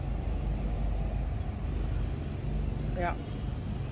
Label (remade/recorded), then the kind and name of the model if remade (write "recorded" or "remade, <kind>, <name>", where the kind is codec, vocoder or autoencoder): recorded